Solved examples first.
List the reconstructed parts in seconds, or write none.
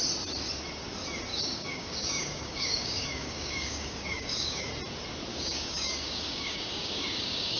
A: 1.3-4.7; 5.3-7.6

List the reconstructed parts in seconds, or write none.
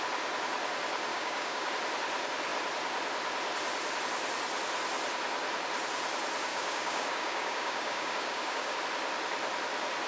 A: 1.1-1.7; 6.5-8.8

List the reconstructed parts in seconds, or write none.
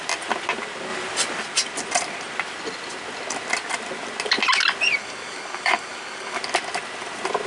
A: 5.0-6.4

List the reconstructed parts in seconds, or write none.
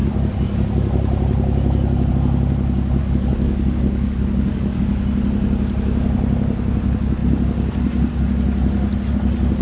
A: 3.0-4.8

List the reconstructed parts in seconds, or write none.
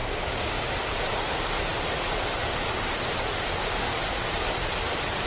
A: 0.0-0.7; 3.6-4.5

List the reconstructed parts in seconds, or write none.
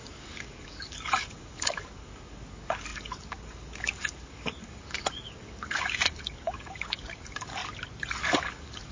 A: 0.0-7.6; 8.2-8.9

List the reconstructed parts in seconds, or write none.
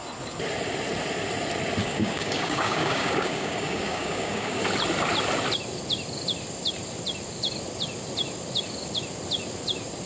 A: 1.8-4.6